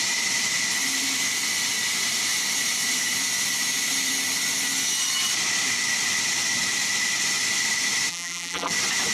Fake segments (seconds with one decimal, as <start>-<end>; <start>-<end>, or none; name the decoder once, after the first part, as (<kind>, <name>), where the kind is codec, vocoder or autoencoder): 8.1-8.7 (vocoder, BigVGAN v2)